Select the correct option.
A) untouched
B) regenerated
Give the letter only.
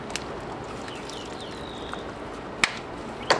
A